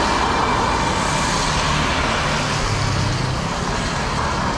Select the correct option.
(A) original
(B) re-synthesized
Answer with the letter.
A